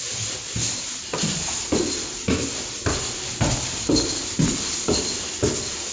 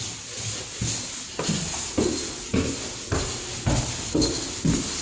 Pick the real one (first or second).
second